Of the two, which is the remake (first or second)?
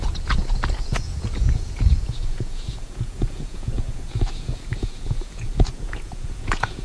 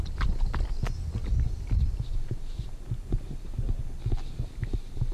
first